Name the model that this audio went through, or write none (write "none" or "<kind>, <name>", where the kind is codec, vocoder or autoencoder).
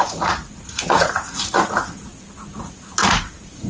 vocoder, Vocos